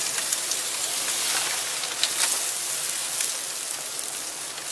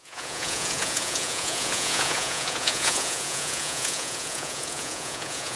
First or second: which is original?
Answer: first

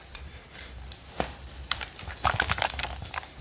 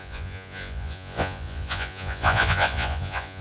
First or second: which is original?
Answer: first